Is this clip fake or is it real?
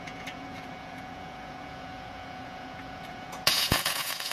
fake